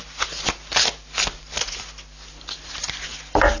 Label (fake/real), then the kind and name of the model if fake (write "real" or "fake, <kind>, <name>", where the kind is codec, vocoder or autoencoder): real